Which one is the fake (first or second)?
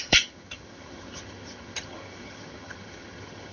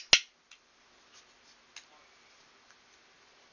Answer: first